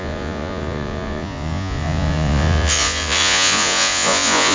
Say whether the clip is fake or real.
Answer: fake